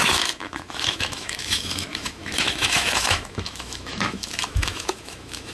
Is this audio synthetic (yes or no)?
yes